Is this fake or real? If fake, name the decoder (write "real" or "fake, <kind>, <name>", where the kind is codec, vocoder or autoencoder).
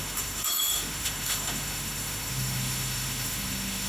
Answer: fake, autoencoder, DAC-VAE